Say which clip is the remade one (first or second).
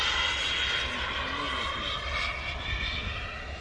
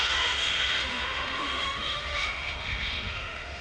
second